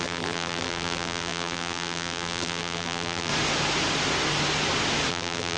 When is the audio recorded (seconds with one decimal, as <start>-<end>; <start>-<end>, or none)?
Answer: 3.3-5.1